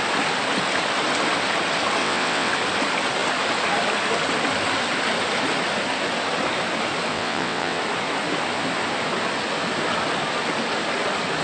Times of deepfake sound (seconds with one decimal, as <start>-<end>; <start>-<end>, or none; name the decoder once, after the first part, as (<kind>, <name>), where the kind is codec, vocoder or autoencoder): 2.0-2.5 (vocoder, WaveNeXt); 7.1-7.8